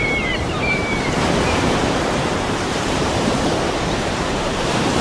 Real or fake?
fake